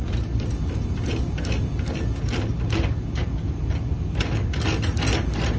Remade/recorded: recorded